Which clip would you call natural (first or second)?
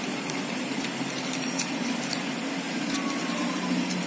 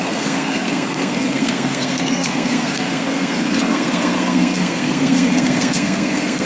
first